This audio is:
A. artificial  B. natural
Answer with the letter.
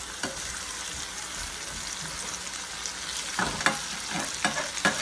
B